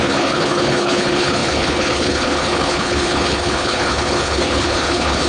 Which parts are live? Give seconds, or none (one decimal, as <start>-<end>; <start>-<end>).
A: none